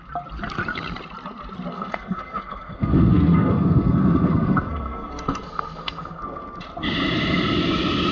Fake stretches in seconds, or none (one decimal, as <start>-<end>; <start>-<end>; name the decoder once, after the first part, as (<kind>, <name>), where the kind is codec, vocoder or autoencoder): 1.7-6.6 (codec, SNAC)